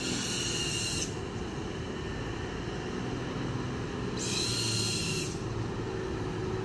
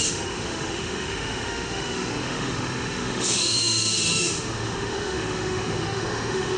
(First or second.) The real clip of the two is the first